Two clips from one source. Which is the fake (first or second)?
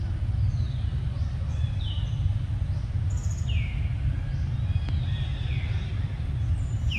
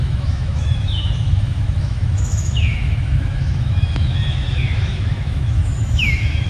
second